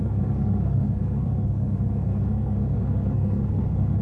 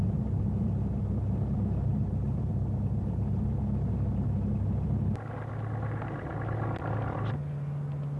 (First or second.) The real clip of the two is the second